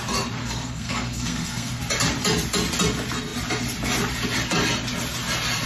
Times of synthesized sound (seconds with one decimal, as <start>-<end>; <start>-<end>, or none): 0.4-1.8